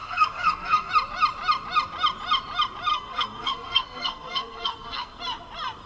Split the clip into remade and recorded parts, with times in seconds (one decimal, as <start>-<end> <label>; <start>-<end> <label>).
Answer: 0.0-0.9 remade; 0.9-2.9 recorded; 2.9-5.2 remade; 5.2-5.9 recorded